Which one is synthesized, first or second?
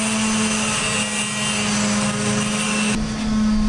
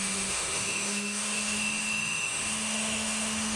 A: second